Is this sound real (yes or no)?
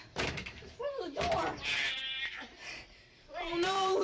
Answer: no